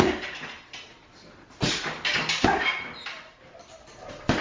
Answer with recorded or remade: recorded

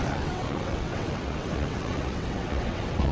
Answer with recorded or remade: remade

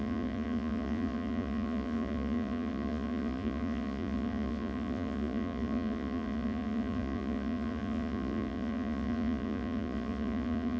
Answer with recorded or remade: remade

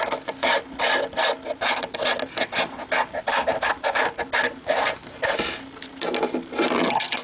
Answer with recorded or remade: recorded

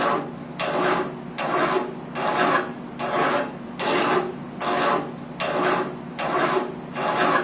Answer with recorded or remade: recorded